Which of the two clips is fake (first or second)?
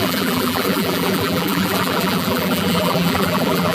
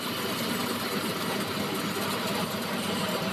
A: first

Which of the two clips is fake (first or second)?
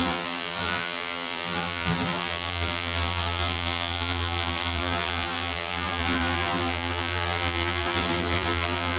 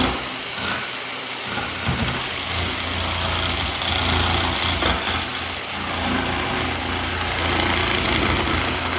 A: first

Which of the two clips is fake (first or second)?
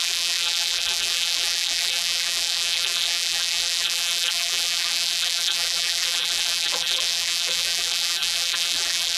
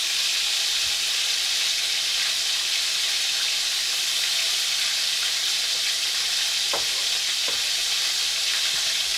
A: first